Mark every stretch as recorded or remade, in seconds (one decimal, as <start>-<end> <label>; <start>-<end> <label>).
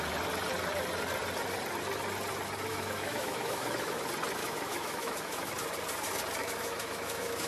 0.0-2.7 recorded; 2.7-4.0 remade; 4.0-4.4 recorded; 4.4-5.5 remade; 5.5-6.4 recorded; 6.4-7.5 remade